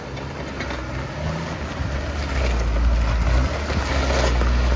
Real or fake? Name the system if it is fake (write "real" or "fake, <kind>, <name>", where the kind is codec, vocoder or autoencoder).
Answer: real